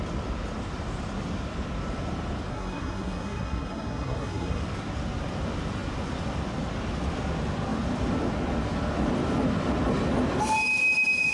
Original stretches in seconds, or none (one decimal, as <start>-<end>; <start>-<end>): 0.0-2.5; 4.6-11.3